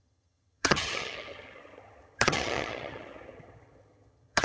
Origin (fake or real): fake